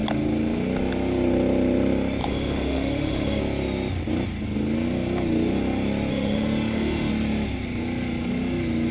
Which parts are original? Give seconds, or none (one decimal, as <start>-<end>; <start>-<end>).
0.0-2.2; 3.4-6.1; 7.1-8.9